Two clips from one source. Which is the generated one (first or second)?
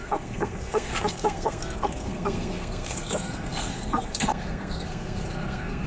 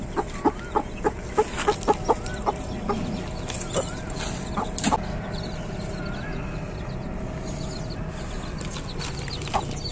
first